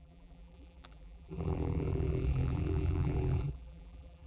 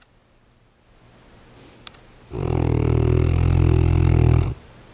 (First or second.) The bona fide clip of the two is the second